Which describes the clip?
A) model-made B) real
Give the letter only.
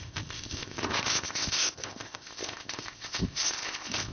A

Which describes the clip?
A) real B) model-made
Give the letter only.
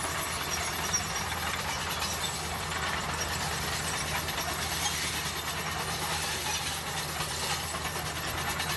A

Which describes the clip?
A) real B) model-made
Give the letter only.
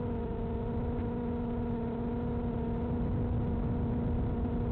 A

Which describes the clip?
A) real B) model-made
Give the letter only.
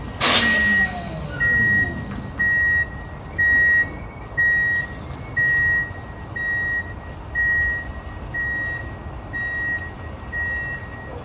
A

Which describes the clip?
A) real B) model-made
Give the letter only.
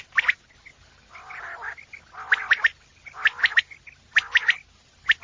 A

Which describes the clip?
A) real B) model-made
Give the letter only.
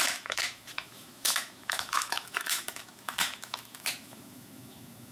B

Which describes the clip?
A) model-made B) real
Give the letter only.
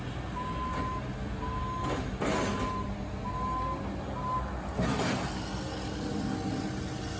B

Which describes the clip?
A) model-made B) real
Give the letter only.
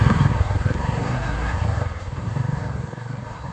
A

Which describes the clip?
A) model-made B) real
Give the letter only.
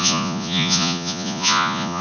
A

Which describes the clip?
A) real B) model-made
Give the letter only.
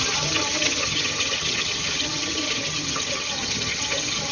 B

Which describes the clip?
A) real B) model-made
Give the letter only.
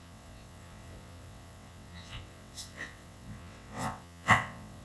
B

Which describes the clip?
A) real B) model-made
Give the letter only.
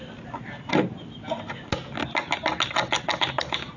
A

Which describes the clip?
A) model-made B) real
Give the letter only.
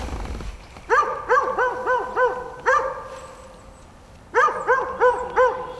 B